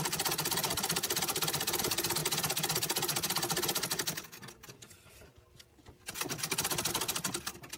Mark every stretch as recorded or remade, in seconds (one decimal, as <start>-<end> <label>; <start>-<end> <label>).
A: 0.0-2.2 remade; 2.2-6.9 recorded; 6.9-7.8 remade